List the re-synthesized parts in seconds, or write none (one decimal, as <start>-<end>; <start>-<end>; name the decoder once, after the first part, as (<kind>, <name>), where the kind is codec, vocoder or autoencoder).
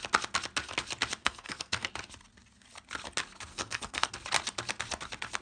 1.2-1.9 (codec, SNAC); 3.5-4.1